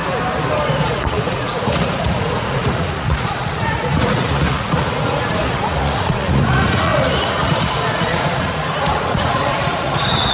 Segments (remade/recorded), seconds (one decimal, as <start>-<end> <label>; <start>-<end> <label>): 0.0-0.8 recorded; 0.8-10.3 remade